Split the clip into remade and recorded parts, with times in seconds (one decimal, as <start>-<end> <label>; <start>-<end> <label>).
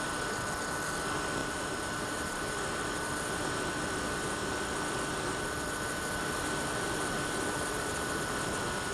0.0-1.4 recorded; 1.4-2.4 remade; 2.4-8.9 recorded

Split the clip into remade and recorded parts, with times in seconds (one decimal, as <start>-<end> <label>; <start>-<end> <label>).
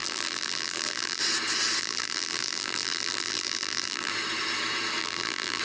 0.0-1.2 remade; 1.2-1.8 recorded; 1.8-4.1 remade; 4.1-5.0 recorded; 5.0-5.6 remade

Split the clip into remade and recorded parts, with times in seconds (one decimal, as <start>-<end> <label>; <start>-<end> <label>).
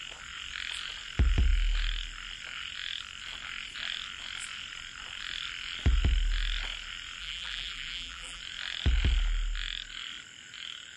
0.0-7.2 recorded; 7.2-8.4 remade; 8.4-11.0 recorded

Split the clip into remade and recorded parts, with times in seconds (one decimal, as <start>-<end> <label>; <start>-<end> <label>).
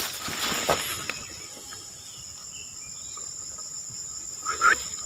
0.0-5.1 recorded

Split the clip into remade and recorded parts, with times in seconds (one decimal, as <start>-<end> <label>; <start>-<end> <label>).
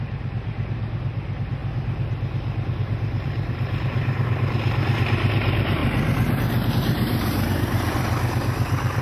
0.0-1.6 remade; 1.6-2.7 recorded; 2.7-5.8 remade; 5.8-6.7 recorded; 6.7-9.0 remade